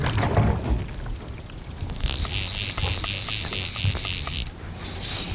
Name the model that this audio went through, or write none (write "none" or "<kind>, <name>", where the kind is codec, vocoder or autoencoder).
none